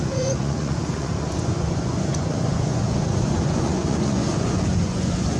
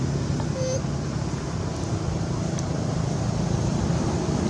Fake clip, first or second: first